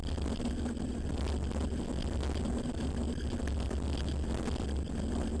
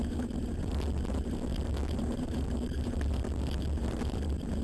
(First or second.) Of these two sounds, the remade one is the second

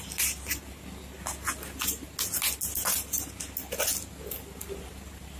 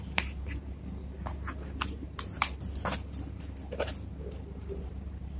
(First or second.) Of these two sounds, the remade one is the second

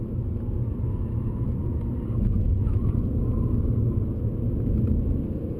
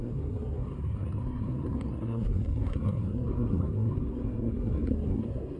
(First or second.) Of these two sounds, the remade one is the second